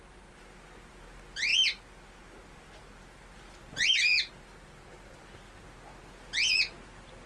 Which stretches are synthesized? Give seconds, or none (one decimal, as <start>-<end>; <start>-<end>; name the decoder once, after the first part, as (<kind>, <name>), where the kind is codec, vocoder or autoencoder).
none